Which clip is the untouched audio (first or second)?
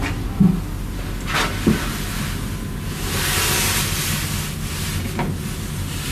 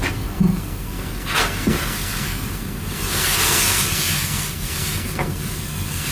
first